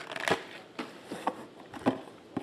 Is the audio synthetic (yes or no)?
no